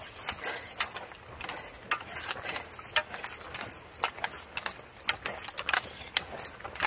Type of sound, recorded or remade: recorded